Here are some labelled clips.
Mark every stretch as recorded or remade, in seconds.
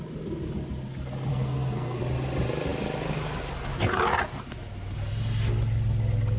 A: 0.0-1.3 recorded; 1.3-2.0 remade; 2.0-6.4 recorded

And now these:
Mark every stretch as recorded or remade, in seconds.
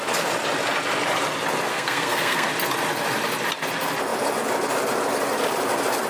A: 0.0-1.7 recorded; 1.7-2.5 remade; 2.5-6.1 recorded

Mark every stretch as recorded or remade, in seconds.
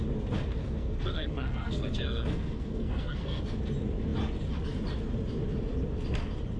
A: 0.0-0.6 recorded; 0.6-3.4 remade; 3.4-6.6 recorded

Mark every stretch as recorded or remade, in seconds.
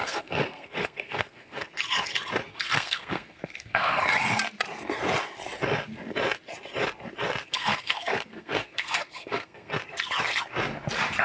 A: 0.0-1.7 remade; 1.7-2.5 recorded; 2.5-4.0 remade; 4.0-7.4 recorded; 7.4-9.7 remade; 9.7-11.2 recorded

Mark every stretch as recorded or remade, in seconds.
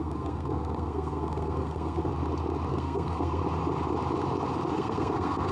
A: 0.0-2.1 remade; 2.1-2.7 recorded; 2.7-3.4 remade; 3.4-4.7 recorded; 4.7-5.5 remade